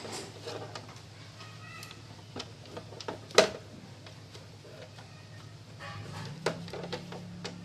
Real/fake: real